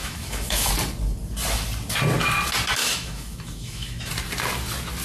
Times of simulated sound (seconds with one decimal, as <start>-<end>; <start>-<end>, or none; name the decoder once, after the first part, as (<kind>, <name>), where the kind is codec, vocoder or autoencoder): 0.0-0.7 (autoencoder, DAC-VAE); 2.8-4.1

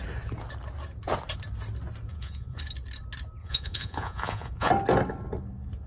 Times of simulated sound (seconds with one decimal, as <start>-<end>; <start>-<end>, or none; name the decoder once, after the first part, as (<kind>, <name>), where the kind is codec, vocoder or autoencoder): 2.1-2.6 (vocoder, Vocos); 3.4-4.7

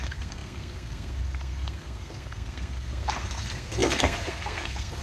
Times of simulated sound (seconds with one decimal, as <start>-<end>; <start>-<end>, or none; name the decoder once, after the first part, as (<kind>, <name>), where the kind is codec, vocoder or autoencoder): 0.0-5.0 (codec, SNAC)

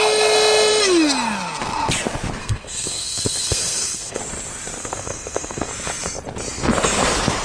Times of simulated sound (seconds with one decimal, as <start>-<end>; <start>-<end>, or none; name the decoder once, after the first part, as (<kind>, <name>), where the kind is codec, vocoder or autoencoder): 2.4-4.2 (codec, SNAC); 4.8-5.7

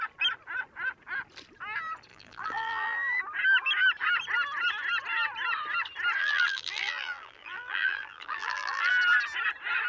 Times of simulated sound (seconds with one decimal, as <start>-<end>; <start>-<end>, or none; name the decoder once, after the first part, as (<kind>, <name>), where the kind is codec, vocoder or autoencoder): 2.1-3.2 (vocoder, BigVGAN v2); 6.2-8.9